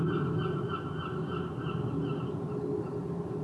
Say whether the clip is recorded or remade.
recorded